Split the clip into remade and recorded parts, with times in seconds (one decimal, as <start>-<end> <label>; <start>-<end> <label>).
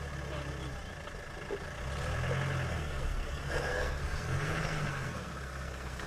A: 0.0-2.7 recorded; 2.7-6.1 remade